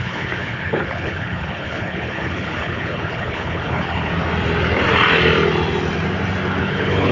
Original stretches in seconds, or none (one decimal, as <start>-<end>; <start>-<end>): 4.1-6.6